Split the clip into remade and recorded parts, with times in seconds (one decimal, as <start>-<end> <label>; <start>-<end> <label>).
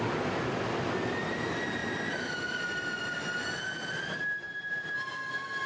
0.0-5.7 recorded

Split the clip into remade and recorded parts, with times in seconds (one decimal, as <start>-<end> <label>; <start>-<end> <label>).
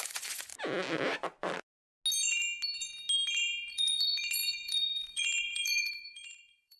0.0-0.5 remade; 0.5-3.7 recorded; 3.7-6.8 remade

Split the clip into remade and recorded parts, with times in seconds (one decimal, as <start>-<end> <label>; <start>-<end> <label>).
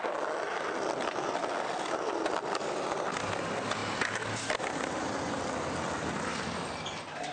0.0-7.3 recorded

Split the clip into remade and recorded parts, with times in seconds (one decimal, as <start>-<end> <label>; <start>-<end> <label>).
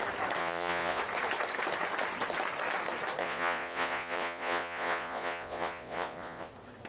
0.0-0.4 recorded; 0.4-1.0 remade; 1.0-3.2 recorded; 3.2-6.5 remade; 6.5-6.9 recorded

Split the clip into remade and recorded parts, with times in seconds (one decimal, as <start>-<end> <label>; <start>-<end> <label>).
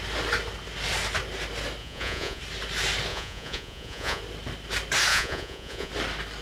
0.0-1.8 recorded; 1.8-2.4 remade; 2.4-3.1 recorded; 3.1-4.2 remade; 4.2-5.1 recorded; 5.1-5.9 remade; 5.9-6.4 recorded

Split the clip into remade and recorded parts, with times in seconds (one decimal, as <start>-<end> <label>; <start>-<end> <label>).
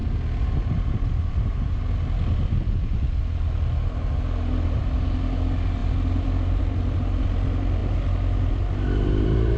0.0-9.6 recorded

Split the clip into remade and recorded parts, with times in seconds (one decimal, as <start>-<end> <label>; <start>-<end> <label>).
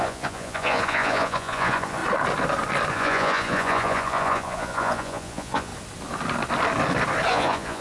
0.0-2.0 remade; 2.0-2.9 recorded; 2.9-5.7 remade; 5.7-7.3 recorded; 7.3-7.8 remade